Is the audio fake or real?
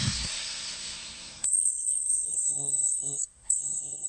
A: fake